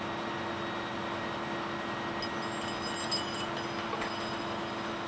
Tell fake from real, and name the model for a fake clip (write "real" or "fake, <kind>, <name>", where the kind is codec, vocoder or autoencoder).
real